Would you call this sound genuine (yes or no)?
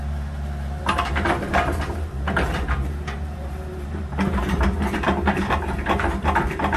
no